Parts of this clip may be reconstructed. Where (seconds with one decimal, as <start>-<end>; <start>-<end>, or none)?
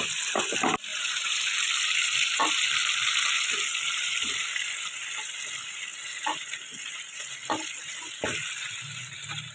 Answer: 0.9-1.4